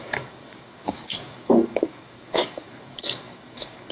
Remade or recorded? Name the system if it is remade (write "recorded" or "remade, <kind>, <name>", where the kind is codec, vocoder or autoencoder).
remade, codec, DAC